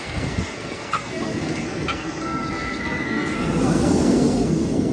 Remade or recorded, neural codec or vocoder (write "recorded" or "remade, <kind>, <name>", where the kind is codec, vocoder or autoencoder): remade, codec, SNAC